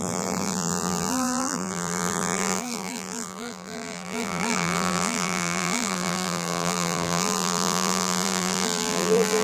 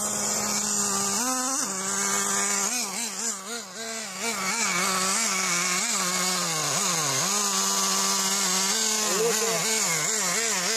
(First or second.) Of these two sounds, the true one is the second